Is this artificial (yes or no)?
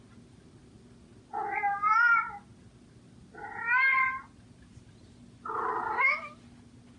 no